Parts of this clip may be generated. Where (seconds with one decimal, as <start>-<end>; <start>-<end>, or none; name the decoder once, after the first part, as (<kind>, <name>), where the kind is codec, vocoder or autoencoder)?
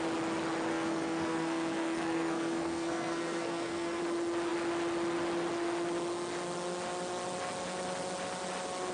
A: 0.7-4.0 (codec, SNAC)